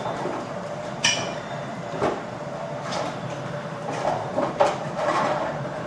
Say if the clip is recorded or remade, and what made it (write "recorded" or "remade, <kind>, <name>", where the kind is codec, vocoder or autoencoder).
remade, vocoder, BigVGAN v2